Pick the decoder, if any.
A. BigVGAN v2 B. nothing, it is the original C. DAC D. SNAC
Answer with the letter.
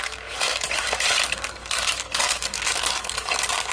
C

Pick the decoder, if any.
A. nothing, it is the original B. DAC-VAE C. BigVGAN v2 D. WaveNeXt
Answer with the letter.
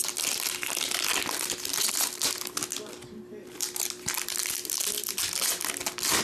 A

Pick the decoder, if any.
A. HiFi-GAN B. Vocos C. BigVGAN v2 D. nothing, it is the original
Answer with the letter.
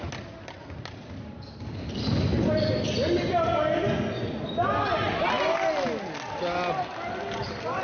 D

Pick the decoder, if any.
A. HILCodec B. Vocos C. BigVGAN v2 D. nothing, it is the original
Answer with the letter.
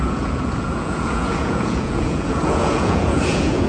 B